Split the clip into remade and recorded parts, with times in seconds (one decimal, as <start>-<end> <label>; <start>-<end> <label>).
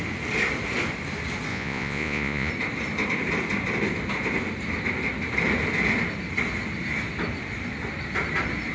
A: 0.0-1.5 recorded; 1.5-2.5 remade; 2.5-8.7 recorded